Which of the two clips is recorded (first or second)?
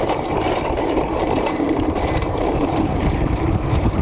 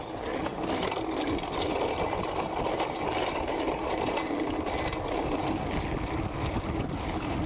second